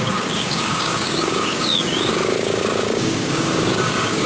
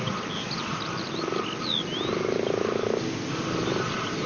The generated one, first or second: first